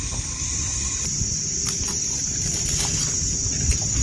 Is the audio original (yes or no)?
yes